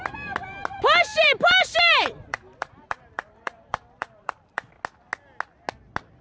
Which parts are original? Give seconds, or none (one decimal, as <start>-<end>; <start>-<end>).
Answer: 0.0-1.1; 4.8-6.2